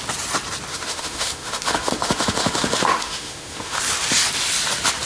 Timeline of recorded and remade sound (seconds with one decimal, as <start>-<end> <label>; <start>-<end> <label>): 0.0-0.7 recorded; 0.7-3.8 remade; 3.8-5.1 recorded